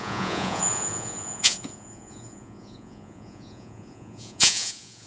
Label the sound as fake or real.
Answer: fake